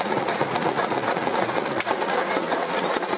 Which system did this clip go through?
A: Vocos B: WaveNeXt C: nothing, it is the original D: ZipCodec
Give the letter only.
A